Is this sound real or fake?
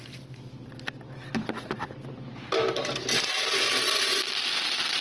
real